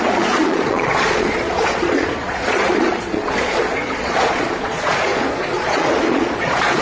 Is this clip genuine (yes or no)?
no